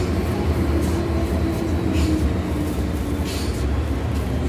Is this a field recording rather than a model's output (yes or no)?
yes